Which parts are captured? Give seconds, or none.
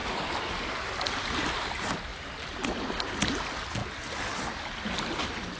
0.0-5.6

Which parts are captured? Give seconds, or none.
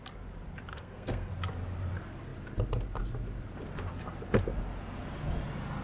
0.0-0.7; 1.3-5.8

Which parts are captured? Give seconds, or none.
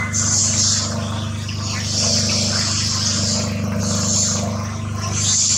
0.0-5.6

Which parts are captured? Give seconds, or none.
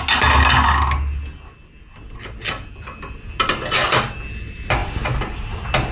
0.0-5.9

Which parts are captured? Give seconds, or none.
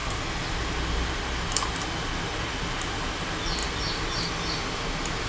0.0-5.3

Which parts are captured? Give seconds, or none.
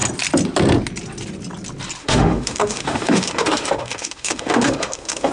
0.0-2.0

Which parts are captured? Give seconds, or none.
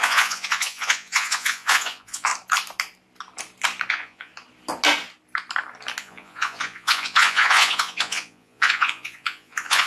2.3-3.9; 4.3-6.0